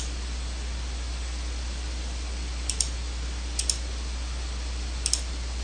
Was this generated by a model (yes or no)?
no